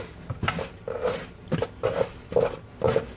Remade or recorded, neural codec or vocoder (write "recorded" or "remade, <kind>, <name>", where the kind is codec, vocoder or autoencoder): recorded